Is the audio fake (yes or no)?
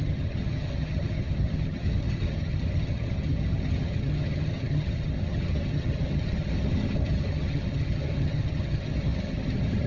yes